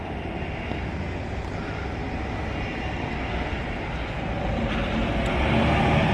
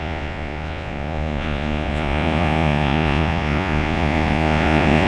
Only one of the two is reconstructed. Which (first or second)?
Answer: second